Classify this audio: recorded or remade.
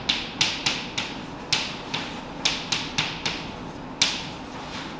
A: recorded